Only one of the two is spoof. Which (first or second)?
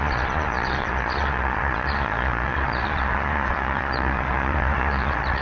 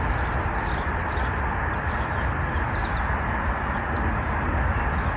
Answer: first